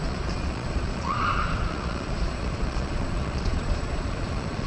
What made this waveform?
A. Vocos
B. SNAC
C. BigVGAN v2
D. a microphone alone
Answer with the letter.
A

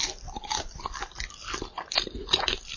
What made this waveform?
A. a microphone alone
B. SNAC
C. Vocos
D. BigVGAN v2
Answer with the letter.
A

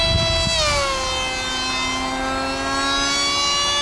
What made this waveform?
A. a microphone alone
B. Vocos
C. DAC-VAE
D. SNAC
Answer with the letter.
A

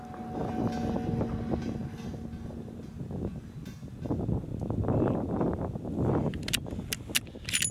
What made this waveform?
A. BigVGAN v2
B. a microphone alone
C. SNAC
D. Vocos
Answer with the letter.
B